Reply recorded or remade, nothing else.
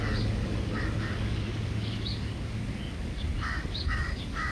remade